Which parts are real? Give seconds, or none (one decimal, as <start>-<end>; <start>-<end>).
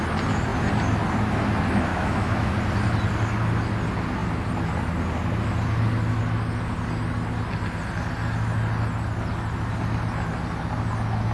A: 0.0-1.9; 2.5-11.3